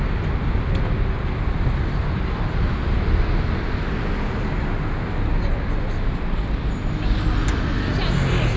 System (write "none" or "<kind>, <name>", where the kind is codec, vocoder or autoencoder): none